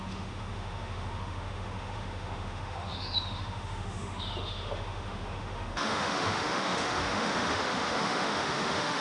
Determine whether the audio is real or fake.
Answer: fake